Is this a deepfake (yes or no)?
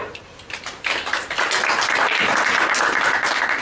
no